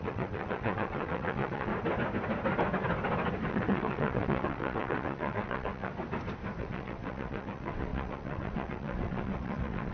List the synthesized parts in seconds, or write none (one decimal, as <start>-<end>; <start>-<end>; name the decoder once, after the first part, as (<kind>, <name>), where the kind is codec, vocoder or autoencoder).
0.0-1.7 (vocoder, WaveNeXt); 3.5-5.9; 6.6-9.9